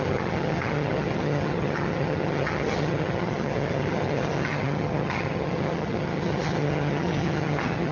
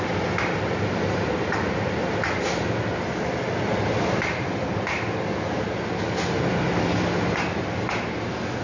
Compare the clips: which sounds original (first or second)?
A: second